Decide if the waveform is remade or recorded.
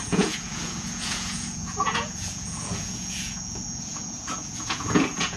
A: remade